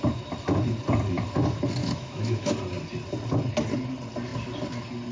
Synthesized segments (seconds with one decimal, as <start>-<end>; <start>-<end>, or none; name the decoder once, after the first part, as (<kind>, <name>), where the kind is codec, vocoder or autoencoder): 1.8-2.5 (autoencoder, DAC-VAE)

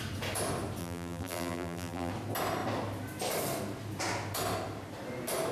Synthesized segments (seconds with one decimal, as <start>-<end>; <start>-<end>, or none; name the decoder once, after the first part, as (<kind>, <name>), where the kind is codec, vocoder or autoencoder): 0.8-2.1 (vocoder, BigVGAN v2)

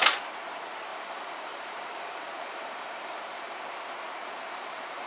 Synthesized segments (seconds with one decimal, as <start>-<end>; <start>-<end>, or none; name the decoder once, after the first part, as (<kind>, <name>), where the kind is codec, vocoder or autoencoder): 0.9-3.6 (vocoder, BigVGAN v2); 4.2-5.1

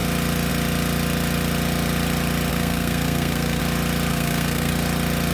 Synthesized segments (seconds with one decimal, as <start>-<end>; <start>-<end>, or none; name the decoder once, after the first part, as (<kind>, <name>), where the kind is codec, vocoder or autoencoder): 2.5-3.6 (codec, SNAC); 4.1-4.7

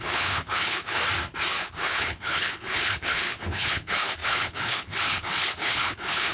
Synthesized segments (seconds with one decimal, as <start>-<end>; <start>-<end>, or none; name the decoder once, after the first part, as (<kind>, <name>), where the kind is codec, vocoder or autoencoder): 0.0-1.0 (codec, HILCodec); 1.6-6.3